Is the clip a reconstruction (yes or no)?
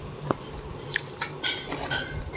yes